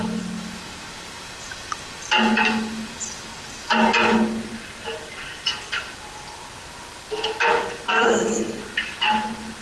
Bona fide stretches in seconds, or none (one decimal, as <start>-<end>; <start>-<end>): 0.0-7.9; 8.6-9.6